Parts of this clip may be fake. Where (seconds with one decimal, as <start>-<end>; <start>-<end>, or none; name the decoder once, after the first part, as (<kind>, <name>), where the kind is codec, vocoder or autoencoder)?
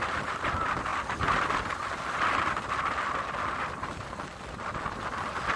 none